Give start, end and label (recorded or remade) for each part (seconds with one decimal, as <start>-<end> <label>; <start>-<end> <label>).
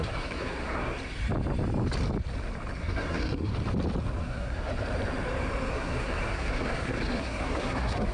0.0-0.9 remade; 0.9-2.8 recorded; 2.8-3.5 remade; 3.5-4.2 recorded; 4.2-4.7 remade; 4.7-5.7 recorded; 5.7-8.1 remade